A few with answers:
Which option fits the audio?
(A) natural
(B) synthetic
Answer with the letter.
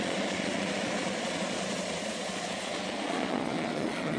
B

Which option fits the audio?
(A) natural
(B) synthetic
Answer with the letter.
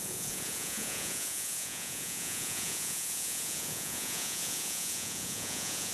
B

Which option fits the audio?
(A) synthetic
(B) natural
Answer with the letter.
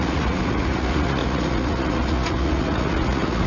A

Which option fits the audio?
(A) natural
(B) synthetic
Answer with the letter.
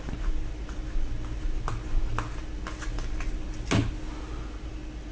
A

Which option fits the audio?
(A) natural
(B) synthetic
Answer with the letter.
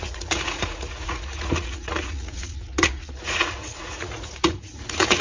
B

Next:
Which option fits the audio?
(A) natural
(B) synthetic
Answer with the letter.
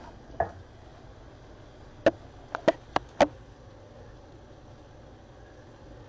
A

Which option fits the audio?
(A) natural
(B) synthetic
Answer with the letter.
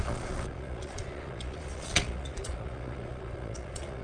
B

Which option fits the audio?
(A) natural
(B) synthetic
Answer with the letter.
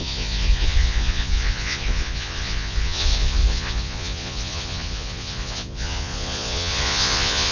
B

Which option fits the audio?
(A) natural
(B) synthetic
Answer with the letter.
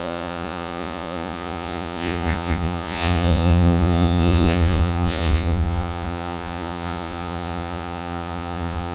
B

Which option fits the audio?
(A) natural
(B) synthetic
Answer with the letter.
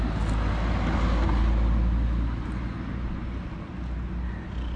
A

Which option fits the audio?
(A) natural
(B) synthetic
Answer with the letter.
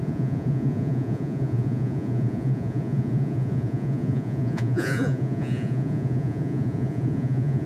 B